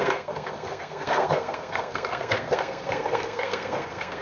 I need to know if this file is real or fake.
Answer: fake